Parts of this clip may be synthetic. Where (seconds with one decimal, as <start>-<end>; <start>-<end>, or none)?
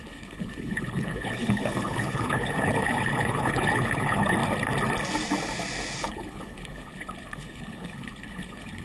0.0-4.4; 6.0-8.8